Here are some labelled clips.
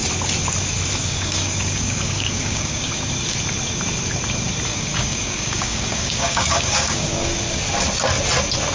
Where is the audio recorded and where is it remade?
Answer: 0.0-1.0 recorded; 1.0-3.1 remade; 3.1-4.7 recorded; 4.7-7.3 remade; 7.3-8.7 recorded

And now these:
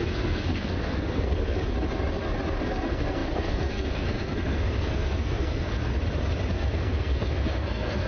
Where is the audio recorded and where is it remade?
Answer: 0.0-1.6 remade; 1.6-2.6 recorded; 2.6-5.9 remade; 5.9-6.5 recorded; 6.5-8.1 remade

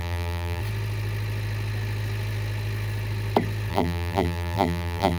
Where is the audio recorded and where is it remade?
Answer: 0.0-0.6 remade; 0.6-3.7 recorded; 3.7-5.2 remade

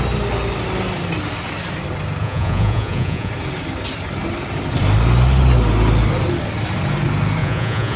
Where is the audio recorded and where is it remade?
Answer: 0.0-2.2 recorded; 2.2-3.3 remade; 3.3-7.4 recorded; 7.4-8.0 remade

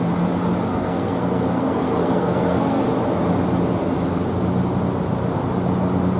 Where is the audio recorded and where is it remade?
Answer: 0.0-0.7 recorded; 0.7-2.8 remade; 2.8-6.2 recorded